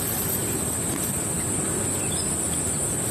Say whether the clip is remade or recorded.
recorded